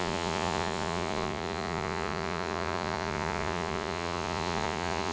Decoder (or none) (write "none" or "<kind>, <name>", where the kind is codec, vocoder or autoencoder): vocoder, Vocos